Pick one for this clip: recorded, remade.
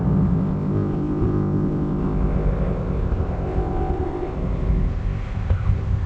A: remade